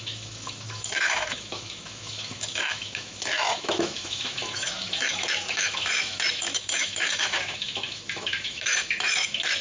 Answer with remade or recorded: remade